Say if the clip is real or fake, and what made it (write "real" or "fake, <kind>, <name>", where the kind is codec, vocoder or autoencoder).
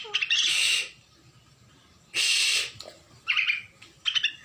real